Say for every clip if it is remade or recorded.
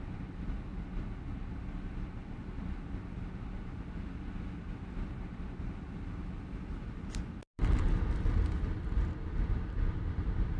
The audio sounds recorded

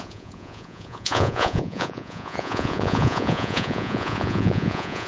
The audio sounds remade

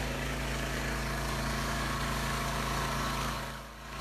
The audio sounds remade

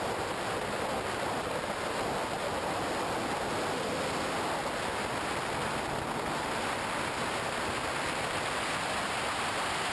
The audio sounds recorded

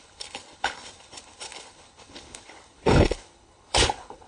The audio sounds remade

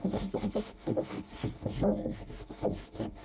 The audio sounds remade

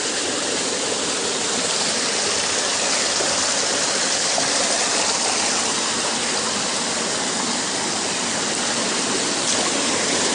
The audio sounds recorded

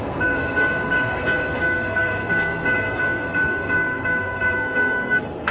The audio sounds remade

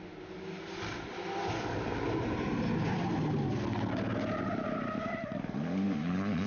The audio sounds recorded